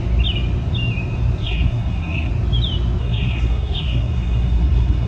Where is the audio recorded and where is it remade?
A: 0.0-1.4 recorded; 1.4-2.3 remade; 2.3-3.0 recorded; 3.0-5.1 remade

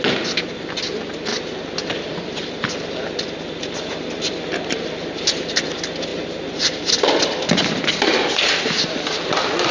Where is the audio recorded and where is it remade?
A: 0.0-1.3 recorded; 1.3-4.4 remade; 4.4-9.7 recorded

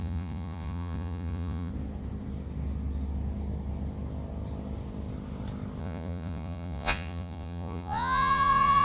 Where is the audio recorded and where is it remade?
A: 0.0-1.7 remade; 1.7-5.8 recorded; 5.8-8.8 remade

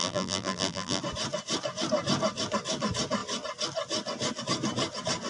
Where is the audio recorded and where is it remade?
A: 0.0-1.0 remade; 1.0-5.3 recorded

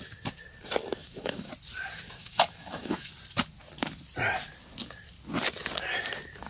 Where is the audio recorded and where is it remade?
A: 0.0-1.0 recorded; 1.0-1.5 remade; 1.5-2.2 recorded; 2.2-3.1 remade; 3.1-6.5 recorded

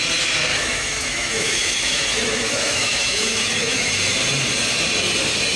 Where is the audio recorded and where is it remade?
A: 0.0-0.5 recorded; 0.5-3.9 remade; 3.9-5.6 recorded

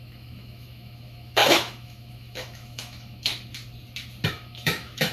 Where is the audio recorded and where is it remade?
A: 0.0-3.3 remade; 3.3-4.3 recorded; 4.3-5.1 remade

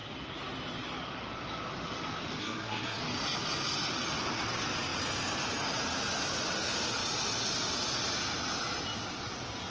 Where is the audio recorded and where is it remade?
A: 0.0-2.4 recorded; 2.4-3.0 remade; 3.0-9.7 recorded